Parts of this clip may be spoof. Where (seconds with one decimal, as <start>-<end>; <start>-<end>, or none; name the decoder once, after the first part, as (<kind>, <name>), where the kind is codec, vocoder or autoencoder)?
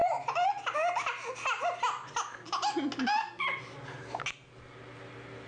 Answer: none